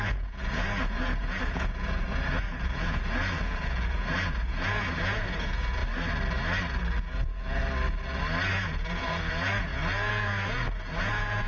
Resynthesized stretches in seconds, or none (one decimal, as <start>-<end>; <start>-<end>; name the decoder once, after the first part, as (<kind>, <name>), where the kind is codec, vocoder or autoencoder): 0.0-5.8 (vocoder, Vocos); 7.0-7.6; 8.5-11.5